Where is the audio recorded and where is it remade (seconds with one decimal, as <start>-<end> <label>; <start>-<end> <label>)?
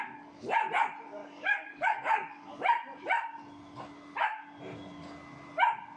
0.0-1.2 recorded; 1.2-2.5 remade; 2.5-6.0 recorded